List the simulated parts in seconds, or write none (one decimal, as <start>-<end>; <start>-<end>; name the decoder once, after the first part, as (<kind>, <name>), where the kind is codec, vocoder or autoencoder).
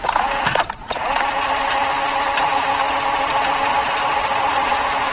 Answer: 3.7-5.1 (vocoder, Vocos)